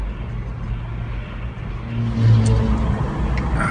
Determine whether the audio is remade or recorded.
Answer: recorded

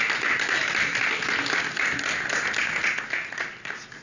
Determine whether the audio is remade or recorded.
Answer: recorded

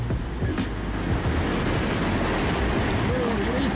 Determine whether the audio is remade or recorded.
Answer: recorded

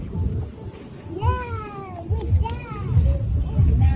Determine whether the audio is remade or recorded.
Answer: recorded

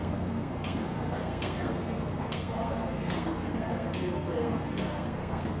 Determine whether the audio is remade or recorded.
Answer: remade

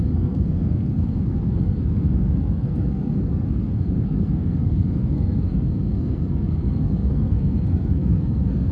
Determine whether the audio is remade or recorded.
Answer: remade